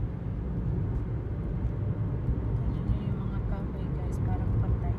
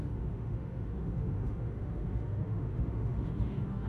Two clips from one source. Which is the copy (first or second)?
second